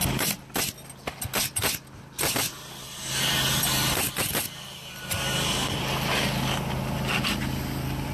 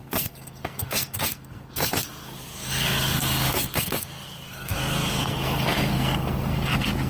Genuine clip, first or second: first